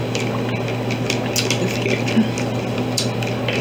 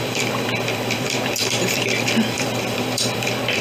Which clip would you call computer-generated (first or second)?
second